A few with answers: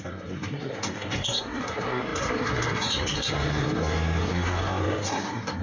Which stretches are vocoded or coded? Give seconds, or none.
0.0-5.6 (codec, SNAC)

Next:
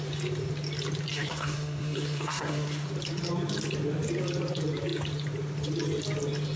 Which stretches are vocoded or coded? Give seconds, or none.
1.1-2.9 (codec, SNAC)

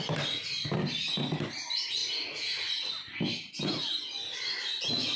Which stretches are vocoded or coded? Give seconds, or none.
none

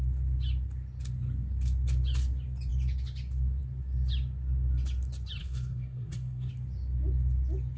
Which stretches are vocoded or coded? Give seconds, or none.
5.4-6.5 (codec, SNAC)

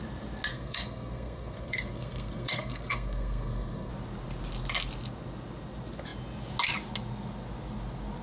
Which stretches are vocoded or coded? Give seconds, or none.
0.5-3.9 (codec, SNAC)